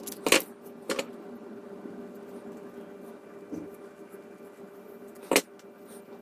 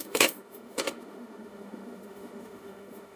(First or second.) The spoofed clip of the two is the second